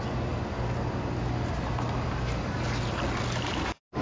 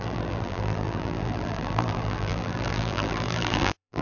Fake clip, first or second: second